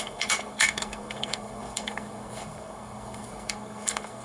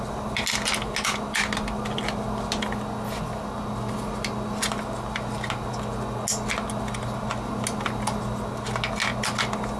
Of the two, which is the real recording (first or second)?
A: second